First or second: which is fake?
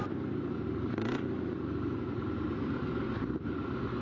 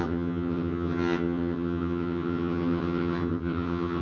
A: second